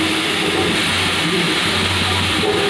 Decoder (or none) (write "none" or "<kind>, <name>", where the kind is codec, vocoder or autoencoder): none